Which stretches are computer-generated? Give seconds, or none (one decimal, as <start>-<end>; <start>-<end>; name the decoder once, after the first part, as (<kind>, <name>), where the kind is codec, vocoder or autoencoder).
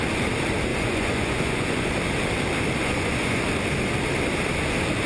0.7-1.9 (vocoder, Vocos); 2.8-3.4